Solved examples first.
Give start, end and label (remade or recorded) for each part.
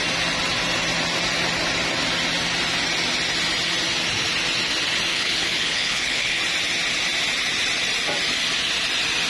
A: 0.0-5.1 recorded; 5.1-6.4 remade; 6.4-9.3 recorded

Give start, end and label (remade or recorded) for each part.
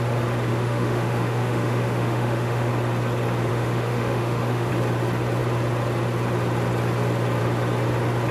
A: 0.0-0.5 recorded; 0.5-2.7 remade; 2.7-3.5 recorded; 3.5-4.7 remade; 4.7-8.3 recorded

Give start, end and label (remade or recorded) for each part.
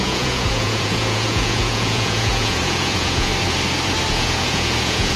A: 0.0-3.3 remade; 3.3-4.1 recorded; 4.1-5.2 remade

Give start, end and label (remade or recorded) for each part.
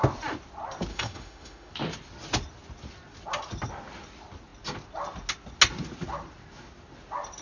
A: 0.0-0.9 recorded; 0.9-1.7 remade; 1.7-7.4 recorded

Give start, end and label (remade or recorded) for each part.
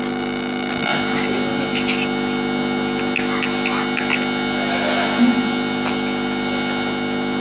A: 0.0-7.4 recorded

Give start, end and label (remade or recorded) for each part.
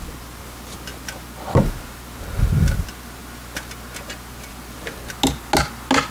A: 0.0-6.1 recorded